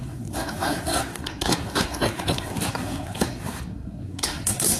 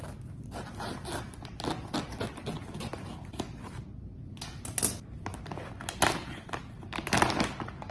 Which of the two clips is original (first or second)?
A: second